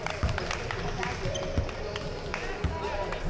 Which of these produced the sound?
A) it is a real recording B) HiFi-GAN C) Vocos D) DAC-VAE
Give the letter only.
A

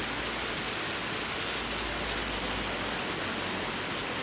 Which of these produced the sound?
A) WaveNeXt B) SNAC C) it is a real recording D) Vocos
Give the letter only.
C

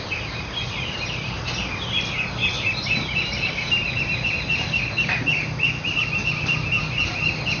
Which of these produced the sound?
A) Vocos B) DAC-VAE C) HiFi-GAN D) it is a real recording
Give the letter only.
D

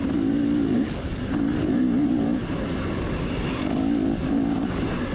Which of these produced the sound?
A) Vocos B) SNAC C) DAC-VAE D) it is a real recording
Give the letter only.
D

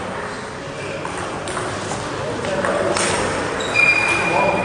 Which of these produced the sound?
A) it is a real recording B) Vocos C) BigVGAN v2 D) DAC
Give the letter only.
A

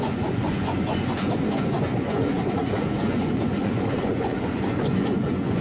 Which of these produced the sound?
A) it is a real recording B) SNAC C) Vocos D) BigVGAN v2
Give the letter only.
C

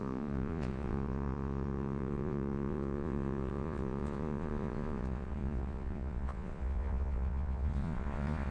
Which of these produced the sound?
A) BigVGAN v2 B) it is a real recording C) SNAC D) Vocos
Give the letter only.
D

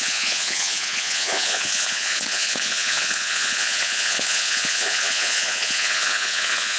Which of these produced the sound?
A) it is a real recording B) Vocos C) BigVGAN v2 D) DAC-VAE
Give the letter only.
B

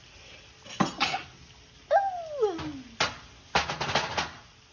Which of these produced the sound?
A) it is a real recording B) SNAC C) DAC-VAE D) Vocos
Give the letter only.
A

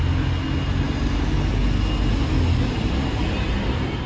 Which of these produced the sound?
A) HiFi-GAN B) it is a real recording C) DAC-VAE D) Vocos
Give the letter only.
B